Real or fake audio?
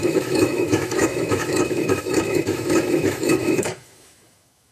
fake